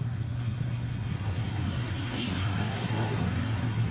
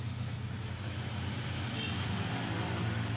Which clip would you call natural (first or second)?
second